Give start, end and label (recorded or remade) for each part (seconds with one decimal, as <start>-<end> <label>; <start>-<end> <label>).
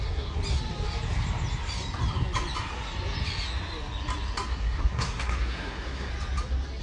0.0-0.4 remade; 0.4-4.5 recorded; 4.5-6.1 remade; 6.1-6.8 recorded